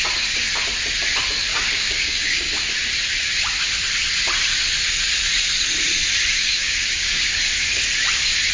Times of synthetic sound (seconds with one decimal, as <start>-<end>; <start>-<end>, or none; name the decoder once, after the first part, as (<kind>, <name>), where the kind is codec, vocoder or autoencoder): 1.5-2.7 (codec, DAC); 6.4-7.4